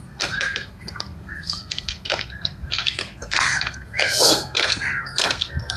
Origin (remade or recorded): remade